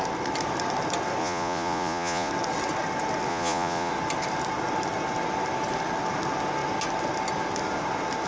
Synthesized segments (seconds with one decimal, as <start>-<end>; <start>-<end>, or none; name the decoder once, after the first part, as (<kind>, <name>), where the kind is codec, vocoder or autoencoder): 1.2-2.3 (vocoder, Vocos); 3.3-3.9